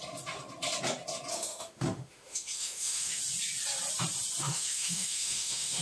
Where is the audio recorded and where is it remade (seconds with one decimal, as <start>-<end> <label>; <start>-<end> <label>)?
0.0-1.3 recorded; 1.3-3.2 remade; 3.2-4.4 recorded; 4.4-5.8 remade